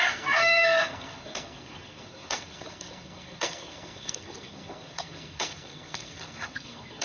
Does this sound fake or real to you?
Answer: fake